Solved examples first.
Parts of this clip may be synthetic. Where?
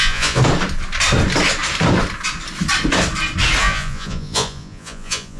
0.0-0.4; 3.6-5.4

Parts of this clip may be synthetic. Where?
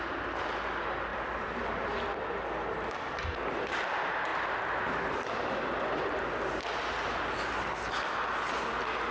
1.1-1.6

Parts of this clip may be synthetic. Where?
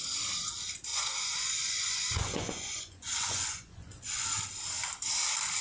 0.9-4.3